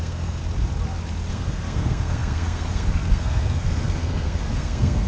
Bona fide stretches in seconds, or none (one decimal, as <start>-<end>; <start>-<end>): 0.4-1.3